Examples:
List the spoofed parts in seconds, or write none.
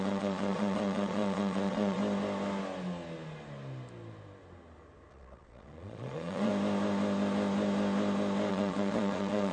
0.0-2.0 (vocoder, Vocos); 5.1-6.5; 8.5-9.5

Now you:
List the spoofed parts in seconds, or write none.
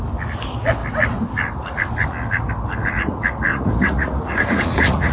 3.5-5.1 (vocoder, Vocos)